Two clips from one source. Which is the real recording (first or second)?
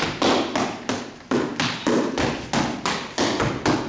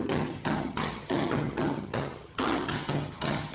first